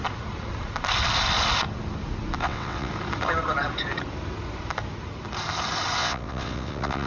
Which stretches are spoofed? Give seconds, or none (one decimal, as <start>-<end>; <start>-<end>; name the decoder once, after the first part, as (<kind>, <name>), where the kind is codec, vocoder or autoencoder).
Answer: 2.4-2.9 (vocoder, WaveNeXt); 6.0-7.1